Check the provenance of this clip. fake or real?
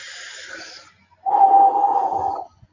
real